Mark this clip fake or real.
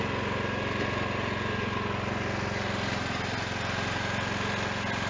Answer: real